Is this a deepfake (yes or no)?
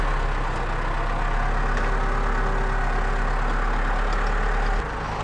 no